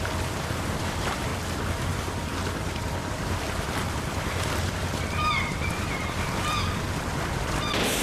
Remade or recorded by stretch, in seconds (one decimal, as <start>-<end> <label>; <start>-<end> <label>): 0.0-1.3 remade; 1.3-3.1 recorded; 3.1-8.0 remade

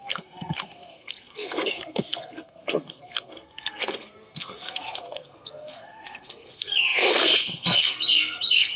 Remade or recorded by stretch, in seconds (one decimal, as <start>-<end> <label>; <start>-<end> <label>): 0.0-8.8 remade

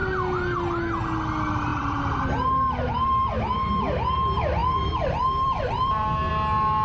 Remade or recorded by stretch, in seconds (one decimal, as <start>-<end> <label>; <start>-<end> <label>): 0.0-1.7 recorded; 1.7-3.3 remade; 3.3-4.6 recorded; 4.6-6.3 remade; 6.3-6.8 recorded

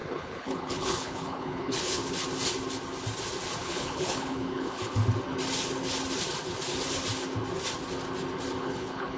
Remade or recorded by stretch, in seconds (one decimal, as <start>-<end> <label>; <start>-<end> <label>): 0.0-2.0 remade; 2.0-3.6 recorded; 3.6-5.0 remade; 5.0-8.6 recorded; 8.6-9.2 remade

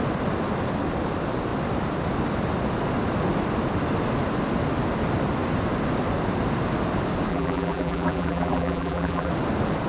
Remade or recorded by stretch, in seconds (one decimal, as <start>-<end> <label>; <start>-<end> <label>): 0.0-7.3 recorded; 7.3-9.3 remade; 9.3-9.9 recorded

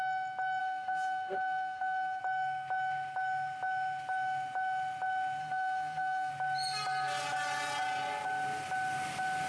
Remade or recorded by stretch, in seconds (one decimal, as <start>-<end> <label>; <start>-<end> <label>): 0.0-0.6 recorded; 0.6-2.2 remade; 2.2-5.4 recorded; 5.4-6.3 remade; 6.3-9.5 recorded

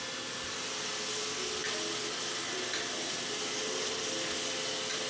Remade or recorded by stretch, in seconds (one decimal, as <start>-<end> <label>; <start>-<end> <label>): 0.0-5.1 recorded

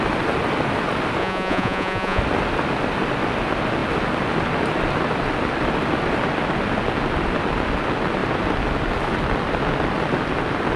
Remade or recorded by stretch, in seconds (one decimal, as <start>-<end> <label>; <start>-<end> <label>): 0.0-1.2 recorded; 1.2-2.2 remade; 2.2-10.8 recorded